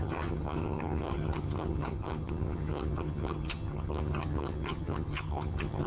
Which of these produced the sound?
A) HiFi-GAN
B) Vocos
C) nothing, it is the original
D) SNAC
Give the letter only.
A